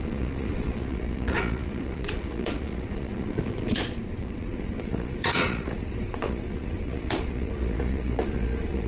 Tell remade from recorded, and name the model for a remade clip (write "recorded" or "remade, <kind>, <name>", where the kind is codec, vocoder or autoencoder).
remade, vocoder, Vocos